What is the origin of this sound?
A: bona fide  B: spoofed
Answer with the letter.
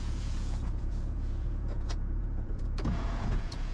B